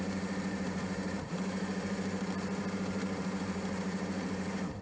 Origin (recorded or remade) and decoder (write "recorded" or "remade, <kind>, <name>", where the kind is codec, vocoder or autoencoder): remade, vocoder, BigVGAN v2